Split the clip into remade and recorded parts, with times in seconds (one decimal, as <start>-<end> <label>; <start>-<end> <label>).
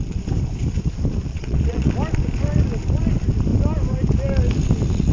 0.0-1.3 recorded; 1.3-1.9 remade; 1.9-5.1 recorded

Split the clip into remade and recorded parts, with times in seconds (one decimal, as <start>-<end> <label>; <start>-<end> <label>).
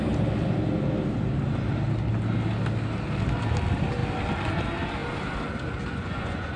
0.0-5.9 recorded; 5.9-6.6 remade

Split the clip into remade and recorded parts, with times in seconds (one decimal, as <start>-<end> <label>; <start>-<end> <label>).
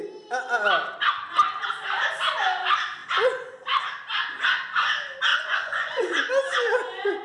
0.0-5.3 recorded; 5.3-6.3 remade; 6.3-7.2 recorded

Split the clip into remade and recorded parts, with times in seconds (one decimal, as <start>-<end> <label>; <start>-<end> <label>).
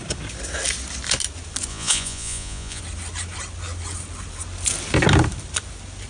0.0-1.7 recorded; 1.7-2.8 remade; 2.8-6.1 recorded